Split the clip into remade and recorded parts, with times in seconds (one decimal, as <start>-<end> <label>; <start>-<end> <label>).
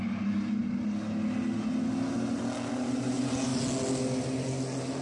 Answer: 0.0-5.0 recorded